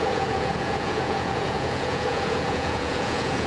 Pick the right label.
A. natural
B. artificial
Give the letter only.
B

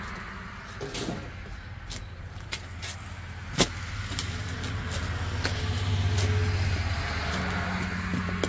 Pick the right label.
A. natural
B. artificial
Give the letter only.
A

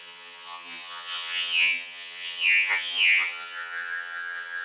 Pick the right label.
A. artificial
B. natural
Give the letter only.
A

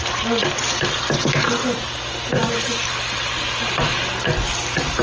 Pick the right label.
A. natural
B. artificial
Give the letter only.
A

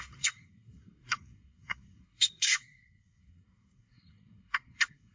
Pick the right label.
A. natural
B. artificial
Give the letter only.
B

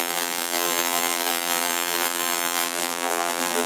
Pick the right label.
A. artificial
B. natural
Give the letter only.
A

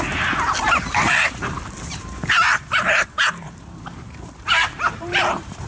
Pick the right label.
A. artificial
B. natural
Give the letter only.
A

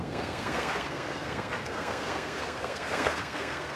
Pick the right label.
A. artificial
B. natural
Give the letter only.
A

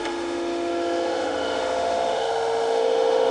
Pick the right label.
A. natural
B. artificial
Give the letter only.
B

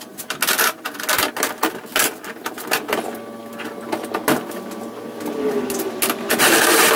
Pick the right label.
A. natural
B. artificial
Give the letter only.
A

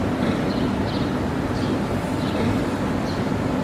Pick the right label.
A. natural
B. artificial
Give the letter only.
A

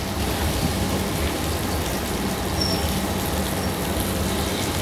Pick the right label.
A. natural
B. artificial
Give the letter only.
A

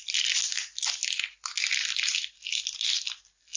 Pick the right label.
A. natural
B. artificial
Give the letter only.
A